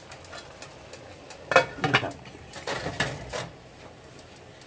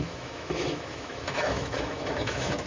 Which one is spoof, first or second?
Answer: second